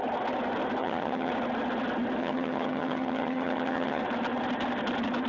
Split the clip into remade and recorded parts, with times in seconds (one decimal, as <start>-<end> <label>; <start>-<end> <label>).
0.0-0.8 recorded; 0.8-1.3 remade; 1.3-2.2 recorded; 2.2-4.0 remade; 4.0-5.3 recorded